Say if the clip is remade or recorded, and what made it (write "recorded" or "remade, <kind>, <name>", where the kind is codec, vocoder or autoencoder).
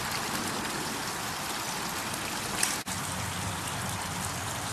recorded